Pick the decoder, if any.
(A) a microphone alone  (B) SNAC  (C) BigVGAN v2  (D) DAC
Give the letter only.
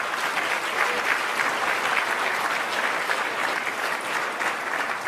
A